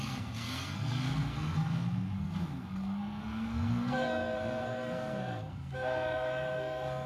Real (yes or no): no